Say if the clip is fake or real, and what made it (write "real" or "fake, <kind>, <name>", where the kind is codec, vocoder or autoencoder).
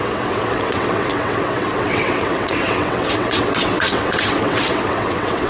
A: fake, vocoder, WaveNeXt